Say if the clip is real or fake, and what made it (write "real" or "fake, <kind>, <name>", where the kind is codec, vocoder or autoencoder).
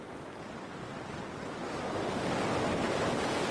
real